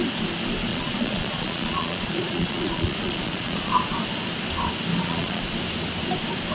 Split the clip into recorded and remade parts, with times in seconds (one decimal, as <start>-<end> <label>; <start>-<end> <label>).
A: 0.0-0.7 recorded; 0.7-3.7 remade; 3.7-4.9 recorded; 4.9-5.4 remade; 5.4-6.5 recorded